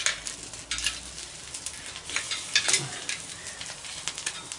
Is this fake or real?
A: real